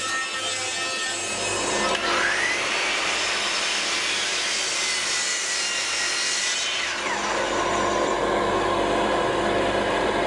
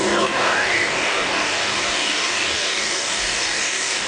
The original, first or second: first